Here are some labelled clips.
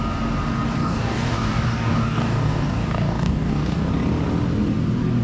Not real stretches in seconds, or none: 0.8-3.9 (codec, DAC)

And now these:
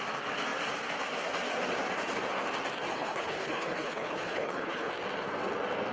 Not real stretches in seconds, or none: 2.9-4.9 (codec, HILCodec)

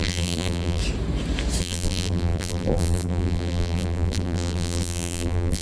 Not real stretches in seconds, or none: 0.0-0.8 (vocoder, BigVGAN v2); 1.6-5.6